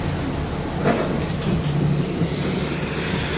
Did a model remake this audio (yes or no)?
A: no